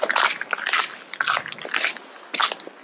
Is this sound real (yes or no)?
yes